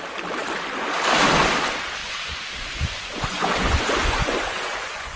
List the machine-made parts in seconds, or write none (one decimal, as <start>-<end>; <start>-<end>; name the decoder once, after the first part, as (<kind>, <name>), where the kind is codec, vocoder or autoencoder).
2.0-5.2 (vocoder, Vocos)